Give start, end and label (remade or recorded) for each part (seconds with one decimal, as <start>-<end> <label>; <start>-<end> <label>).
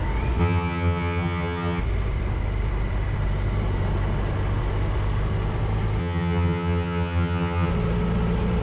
0.0-0.4 recorded; 0.4-1.8 remade; 1.8-6.0 recorded; 6.0-7.7 remade; 7.7-8.6 recorded